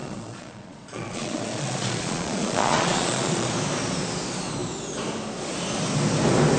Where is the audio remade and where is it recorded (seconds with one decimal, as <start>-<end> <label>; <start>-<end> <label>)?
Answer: 0.0-3.5 remade; 3.5-6.6 recorded